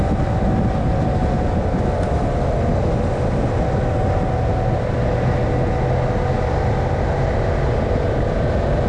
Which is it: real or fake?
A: real